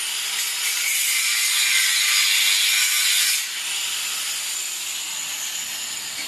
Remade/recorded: recorded